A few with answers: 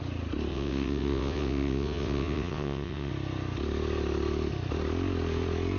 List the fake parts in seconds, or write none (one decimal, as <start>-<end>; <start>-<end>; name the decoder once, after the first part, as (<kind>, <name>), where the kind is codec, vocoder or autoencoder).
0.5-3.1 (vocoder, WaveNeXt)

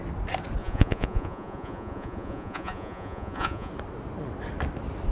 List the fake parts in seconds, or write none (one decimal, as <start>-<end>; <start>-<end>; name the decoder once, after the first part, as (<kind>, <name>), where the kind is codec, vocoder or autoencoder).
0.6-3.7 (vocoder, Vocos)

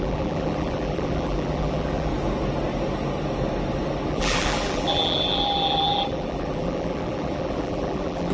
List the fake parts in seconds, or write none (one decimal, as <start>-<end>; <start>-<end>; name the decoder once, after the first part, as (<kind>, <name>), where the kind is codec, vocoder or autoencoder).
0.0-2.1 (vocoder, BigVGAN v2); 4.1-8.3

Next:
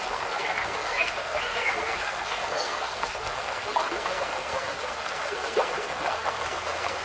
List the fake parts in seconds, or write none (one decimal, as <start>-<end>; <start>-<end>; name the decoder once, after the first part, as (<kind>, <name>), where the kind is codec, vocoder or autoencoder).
0.0-7.0 (codec, SNAC)

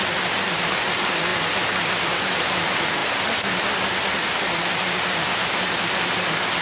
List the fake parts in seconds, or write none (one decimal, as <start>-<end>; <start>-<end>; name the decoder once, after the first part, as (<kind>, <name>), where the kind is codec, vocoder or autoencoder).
none

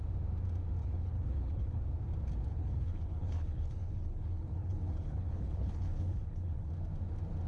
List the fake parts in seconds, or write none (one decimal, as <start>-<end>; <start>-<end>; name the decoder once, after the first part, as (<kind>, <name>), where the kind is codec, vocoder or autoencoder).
0.8-1.8 (codec, HILCodec); 2.5-6.7